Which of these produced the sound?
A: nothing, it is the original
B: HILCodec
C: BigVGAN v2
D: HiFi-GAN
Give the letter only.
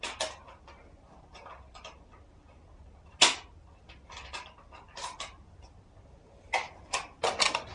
A